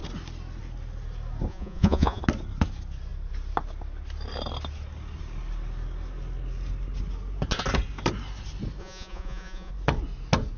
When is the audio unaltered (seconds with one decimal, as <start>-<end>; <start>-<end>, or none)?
0.0-1.5; 2.2-8.8; 9.7-10.6